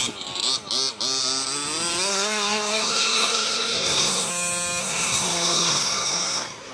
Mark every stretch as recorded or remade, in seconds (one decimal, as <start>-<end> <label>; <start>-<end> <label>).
0.0-2.1 recorded; 2.1-4.3 remade; 4.3-4.8 recorded; 4.8-6.7 remade